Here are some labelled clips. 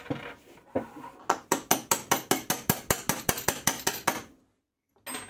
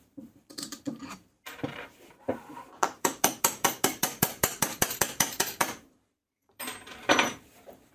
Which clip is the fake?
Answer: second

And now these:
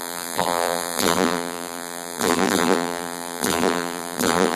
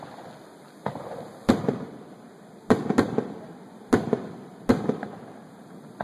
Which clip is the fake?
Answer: first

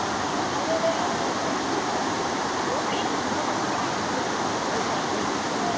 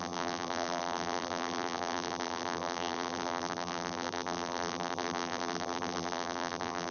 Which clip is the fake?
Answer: second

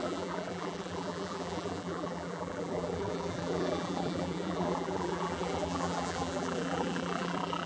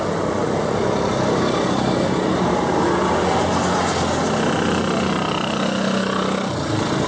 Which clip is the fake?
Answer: first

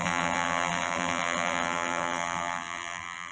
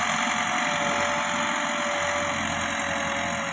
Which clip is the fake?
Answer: first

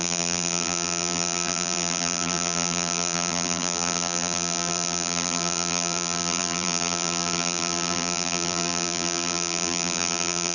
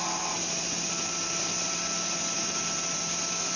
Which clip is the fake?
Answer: first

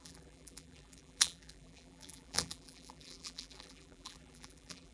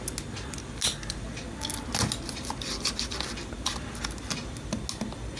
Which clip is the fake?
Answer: first